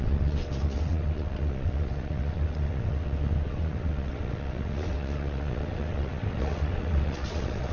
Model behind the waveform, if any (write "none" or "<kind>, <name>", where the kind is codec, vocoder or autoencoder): vocoder, WaveNeXt